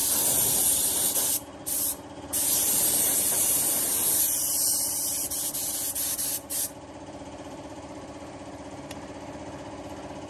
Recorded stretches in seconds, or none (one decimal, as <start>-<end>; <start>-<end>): 4.2-6.5; 8.8-10.3